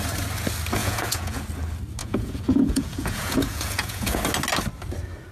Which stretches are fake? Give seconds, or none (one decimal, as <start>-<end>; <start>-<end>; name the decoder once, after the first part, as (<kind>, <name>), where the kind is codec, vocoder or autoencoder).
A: 0.8-1.4 (vocoder, Vocos); 2.0-4.2